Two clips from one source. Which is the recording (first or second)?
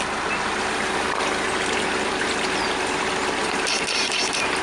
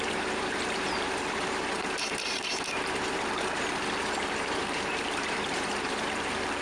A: first